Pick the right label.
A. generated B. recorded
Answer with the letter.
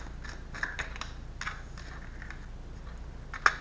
B